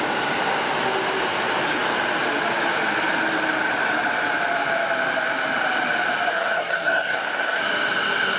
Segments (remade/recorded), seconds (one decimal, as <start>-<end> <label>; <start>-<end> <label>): 0.0-6.3 recorded; 6.3-7.6 remade; 7.6-8.4 recorded